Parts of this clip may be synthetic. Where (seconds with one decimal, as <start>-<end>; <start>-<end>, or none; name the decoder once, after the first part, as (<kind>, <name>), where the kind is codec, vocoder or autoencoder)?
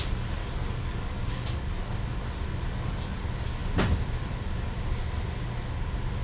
0.4-2.2 (codec, DAC); 2.6-3.2